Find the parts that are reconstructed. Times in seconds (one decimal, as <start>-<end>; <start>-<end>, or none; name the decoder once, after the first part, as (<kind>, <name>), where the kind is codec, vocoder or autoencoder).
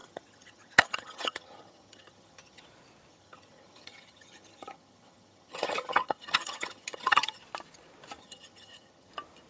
0.0-2.6 (vocoder, HiFi-GAN); 3.1-7.4; 8.2-9.1